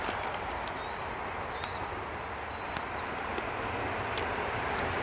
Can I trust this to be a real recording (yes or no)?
yes